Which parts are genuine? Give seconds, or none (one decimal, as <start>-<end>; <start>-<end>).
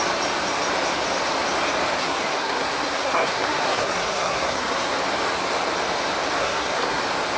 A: 0.0-2.0; 4.9-6.4; 7.0-7.4